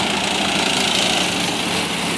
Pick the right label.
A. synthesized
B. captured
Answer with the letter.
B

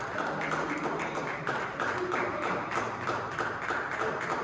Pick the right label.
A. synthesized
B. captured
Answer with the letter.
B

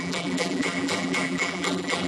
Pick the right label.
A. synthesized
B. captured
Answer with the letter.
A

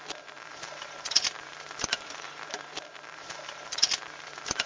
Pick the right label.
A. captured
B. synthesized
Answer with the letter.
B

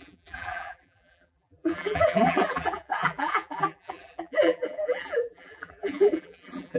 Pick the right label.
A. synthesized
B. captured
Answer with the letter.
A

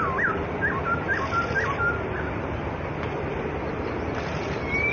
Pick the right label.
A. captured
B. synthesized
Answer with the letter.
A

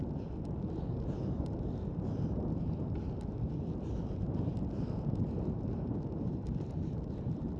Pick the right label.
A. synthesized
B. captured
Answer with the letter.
B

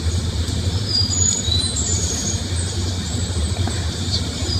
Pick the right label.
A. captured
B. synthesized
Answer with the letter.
B